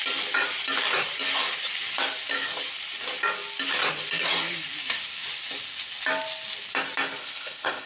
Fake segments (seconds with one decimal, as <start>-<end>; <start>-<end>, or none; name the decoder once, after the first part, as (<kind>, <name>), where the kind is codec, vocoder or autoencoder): 7.2-7.9 (codec, ZipCodec)